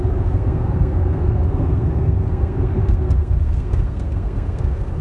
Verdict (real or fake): fake